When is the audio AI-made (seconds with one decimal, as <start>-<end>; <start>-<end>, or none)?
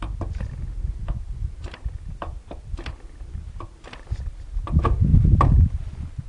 none